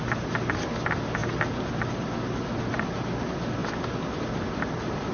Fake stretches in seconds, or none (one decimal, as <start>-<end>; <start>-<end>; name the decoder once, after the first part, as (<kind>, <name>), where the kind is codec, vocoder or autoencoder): none